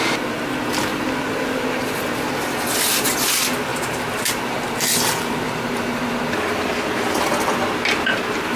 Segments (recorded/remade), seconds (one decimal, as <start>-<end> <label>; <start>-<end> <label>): 0.0-0.9 recorded; 0.9-2.0 remade; 2.0-3.7 recorded; 3.7-6.1 remade; 6.1-8.6 recorded